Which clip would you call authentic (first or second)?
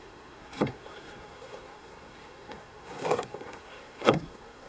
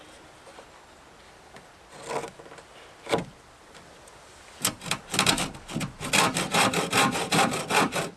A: second